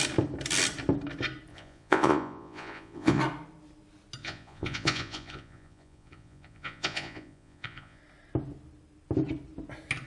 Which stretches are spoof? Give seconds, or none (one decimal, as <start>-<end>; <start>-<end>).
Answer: 1.5-3.2; 4.2-8.0